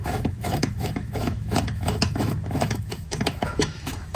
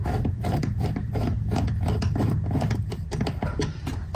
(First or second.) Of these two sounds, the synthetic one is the first